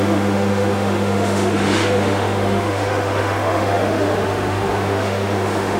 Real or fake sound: fake